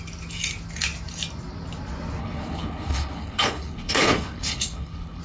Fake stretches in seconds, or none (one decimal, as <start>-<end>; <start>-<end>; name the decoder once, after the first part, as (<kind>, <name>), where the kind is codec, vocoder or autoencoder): 2.2-5.2 (codec, HILCodec)

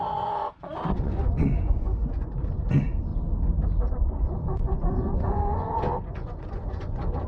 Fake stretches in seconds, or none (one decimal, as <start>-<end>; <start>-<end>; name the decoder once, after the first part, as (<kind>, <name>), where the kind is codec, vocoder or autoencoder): 0.0-3.1 (vocoder, Vocos); 3.9-7.3